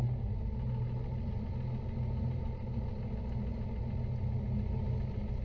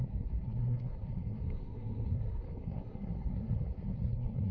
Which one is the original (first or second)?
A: first